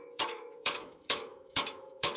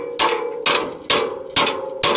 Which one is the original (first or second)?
second